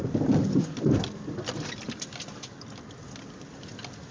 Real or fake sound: real